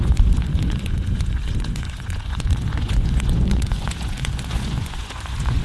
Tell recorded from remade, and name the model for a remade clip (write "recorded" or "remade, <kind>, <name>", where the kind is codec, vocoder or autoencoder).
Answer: remade, vocoder, Vocos